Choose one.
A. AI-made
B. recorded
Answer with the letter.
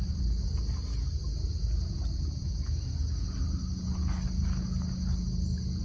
B